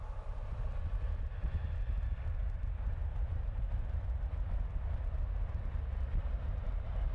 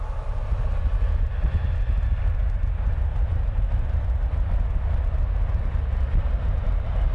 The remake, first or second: first